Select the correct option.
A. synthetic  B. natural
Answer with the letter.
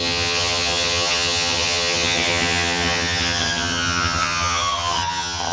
A